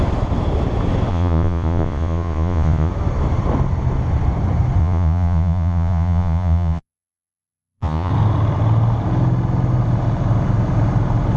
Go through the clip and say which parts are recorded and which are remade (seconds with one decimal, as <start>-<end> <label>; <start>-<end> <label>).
0.0-1.1 recorded; 1.1-2.9 remade; 2.9-4.8 recorded; 4.8-8.1 remade; 8.1-11.4 recorded